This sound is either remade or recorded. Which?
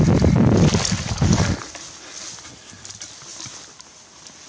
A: recorded